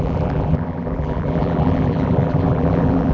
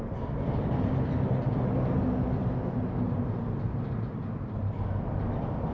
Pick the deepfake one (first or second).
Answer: first